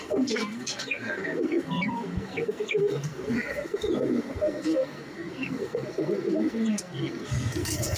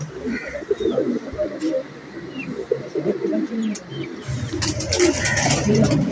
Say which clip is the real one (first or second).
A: second